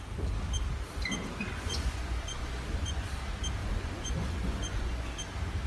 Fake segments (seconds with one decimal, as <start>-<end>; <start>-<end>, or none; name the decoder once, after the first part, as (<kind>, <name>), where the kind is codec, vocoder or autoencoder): 1.5-3.1 (vocoder, Vocos); 3.6-5.1